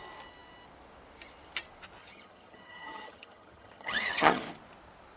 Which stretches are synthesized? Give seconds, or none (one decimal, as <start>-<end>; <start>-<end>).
2.0-4.4